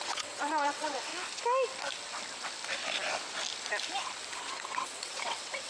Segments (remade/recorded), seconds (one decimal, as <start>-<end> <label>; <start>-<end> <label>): 0.0-1.1 remade; 1.1-4.5 recorded; 4.5-5.7 remade